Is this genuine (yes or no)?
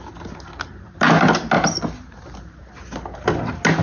yes